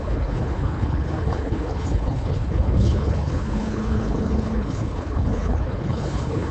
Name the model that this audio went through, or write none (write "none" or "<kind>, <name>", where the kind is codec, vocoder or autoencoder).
codec, HILCodec